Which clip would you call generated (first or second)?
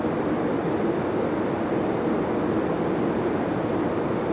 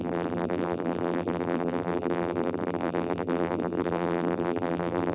second